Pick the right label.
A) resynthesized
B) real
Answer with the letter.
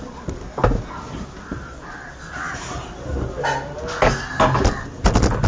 B